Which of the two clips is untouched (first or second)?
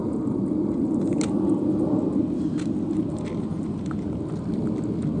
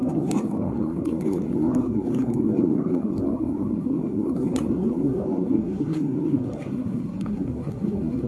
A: first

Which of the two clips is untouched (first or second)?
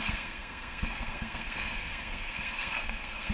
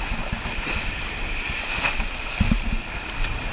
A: second